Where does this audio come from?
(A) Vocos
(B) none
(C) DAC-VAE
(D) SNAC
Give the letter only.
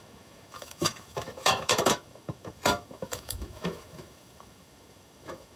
C